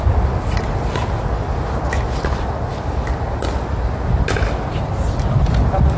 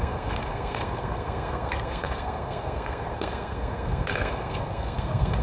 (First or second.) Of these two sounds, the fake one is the second